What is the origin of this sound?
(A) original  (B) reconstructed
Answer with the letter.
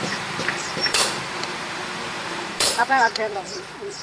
B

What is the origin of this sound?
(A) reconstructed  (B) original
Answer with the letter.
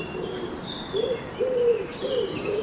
A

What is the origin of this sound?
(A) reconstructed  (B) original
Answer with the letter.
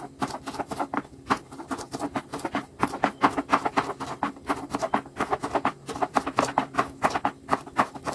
B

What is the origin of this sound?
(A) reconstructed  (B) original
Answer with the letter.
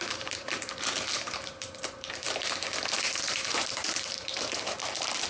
A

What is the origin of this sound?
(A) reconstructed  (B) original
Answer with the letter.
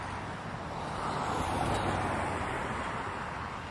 B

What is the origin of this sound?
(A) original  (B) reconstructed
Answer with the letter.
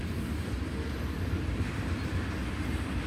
A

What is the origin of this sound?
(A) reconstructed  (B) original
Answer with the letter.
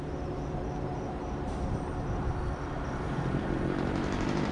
A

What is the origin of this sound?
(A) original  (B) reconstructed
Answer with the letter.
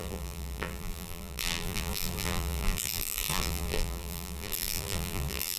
B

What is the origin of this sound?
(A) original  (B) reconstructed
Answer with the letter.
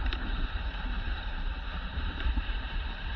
B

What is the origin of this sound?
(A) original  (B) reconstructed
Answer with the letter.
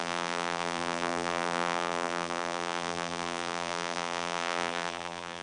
B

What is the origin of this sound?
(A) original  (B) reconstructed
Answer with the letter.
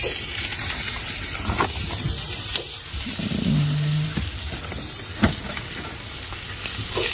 A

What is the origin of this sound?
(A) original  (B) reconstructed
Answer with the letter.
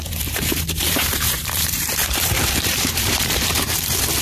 B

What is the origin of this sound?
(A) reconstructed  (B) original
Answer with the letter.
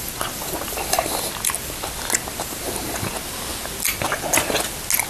B